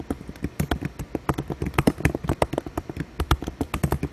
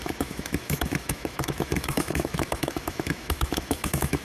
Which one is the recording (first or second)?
first